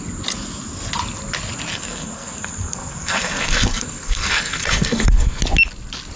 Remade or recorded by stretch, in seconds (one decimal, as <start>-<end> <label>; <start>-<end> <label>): 0.0-1.7 recorded; 1.7-5.4 remade; 5.4-6.2 recorded